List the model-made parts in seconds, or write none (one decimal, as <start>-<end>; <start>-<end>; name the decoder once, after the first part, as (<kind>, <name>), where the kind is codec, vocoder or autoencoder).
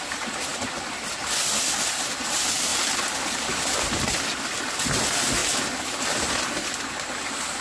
0.0-0.5 (vocoder, BigVGAN v2); 1.9-5.4; 6.3-7.6